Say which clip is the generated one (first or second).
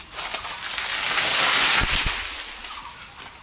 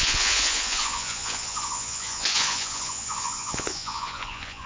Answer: second